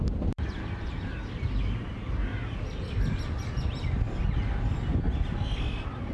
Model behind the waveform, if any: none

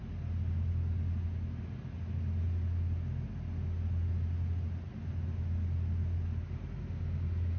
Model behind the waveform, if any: none